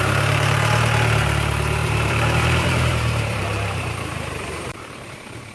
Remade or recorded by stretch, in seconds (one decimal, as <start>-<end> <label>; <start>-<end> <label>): 0.0-1.8 recorded; 1.8-5.1 remade; 5.1-5.5 recorded